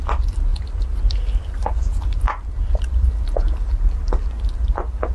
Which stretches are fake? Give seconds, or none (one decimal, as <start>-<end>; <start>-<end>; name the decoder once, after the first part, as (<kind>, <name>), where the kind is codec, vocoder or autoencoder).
0.5-3.1 (vocoder, BigVGAN v2)